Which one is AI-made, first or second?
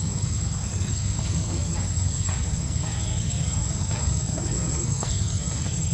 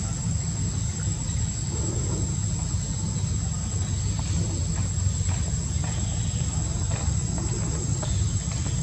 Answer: first